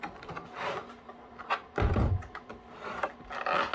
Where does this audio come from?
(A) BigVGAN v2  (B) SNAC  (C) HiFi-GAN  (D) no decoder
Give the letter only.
D